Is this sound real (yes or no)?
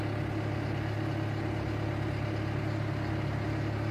yes